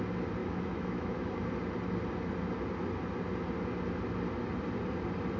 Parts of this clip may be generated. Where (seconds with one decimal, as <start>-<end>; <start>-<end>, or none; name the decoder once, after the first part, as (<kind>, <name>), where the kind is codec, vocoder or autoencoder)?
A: 0.4-1.5 (autoencoder, DAC-VAE)